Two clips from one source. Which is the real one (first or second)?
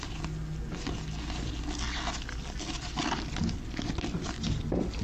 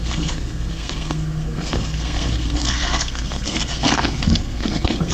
first